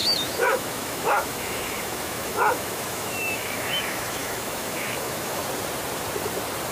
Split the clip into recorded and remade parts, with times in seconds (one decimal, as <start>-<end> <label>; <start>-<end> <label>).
0.0-5.4 remade; 5.4-6.7 recorded